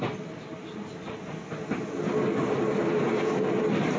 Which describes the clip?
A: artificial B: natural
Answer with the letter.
B